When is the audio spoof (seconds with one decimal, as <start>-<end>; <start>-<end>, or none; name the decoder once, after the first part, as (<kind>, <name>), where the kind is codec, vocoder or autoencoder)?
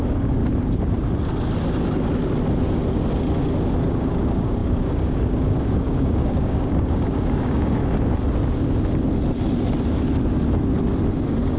0.0-0.4 (codec, DAC); 3.9-7.8; 11.1-11.6